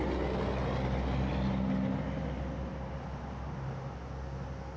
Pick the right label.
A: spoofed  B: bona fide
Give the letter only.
B